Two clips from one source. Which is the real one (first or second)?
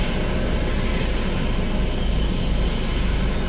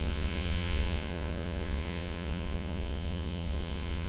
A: first